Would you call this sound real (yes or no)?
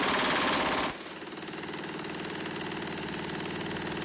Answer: yes